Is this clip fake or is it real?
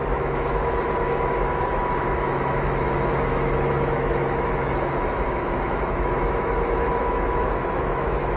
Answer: fake